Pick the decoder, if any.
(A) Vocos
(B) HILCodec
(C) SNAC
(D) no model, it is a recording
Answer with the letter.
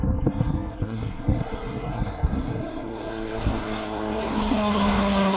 C